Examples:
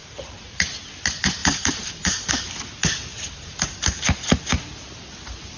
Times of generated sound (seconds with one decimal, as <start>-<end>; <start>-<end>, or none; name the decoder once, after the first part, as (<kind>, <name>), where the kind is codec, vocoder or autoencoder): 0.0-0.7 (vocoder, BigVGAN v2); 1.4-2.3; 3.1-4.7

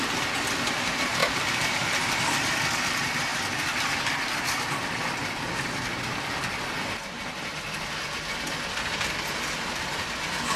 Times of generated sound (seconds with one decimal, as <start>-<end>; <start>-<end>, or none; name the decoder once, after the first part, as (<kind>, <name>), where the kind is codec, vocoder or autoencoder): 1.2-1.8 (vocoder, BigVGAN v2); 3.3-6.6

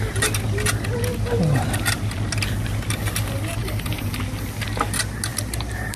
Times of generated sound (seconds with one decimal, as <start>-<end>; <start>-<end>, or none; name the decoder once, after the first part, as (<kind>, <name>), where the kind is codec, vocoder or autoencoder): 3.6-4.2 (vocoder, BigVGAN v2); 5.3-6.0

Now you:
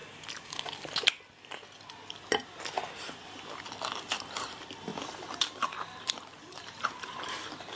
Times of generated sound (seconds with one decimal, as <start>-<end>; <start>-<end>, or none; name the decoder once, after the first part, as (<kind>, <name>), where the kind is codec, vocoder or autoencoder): 4.3-7.8 (vocoder, BigVGAN v2)

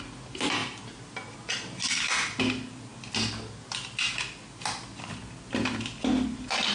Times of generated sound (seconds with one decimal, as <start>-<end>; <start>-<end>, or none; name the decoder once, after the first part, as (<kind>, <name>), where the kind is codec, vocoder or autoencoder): none

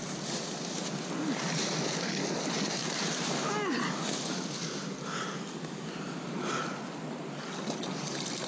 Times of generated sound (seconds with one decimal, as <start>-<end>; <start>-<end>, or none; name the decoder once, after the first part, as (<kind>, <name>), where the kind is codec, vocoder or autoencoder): none

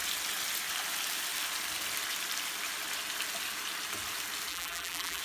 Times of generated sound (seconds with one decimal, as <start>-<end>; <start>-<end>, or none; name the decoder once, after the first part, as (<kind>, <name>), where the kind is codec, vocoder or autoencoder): 4.5-5.2 (vocoder, BigVGAN v2)

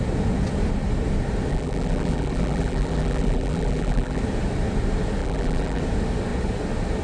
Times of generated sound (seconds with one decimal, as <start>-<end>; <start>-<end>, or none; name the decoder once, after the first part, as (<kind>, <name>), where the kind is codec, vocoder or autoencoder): 1.5-4.2 (vocoder, BigVGAN v2); 5.2-5.8